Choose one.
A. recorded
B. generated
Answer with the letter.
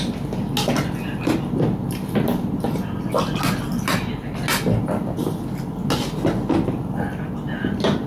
A